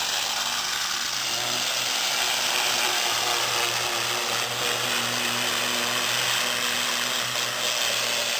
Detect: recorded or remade recorded